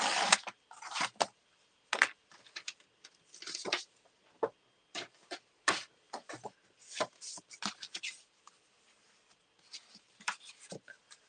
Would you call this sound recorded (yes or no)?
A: yes